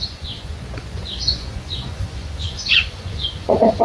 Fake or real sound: fake